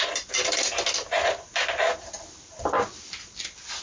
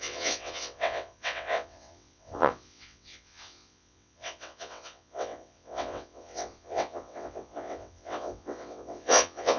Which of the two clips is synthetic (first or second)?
second